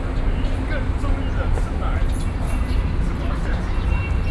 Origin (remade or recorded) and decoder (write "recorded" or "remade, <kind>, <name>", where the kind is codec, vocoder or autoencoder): recorded